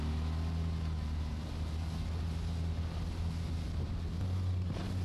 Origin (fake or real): real